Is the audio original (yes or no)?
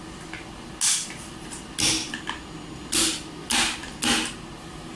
yes